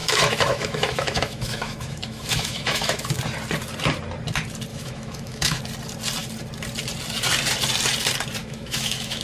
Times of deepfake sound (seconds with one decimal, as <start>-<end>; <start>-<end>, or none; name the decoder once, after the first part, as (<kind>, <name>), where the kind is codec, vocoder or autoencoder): 0.0-3.2 (autoencoder, DAC-VAE); 4.7-5.6; 8.4-9.2